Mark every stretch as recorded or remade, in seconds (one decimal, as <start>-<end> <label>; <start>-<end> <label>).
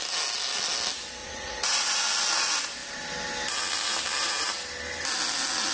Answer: 0.0-1.2 recorded; 1.2-2.0 remade; 2.0-5.7 recorded